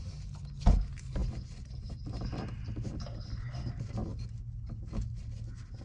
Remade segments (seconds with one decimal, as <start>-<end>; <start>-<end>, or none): none